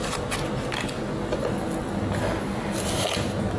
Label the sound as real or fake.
real